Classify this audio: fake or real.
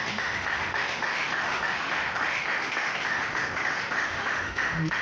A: fake